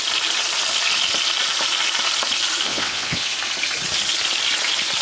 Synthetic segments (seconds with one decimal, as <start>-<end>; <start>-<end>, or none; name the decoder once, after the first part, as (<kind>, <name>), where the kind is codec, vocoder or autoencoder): 2.7-3.3 (vocoder, WaveNeXt)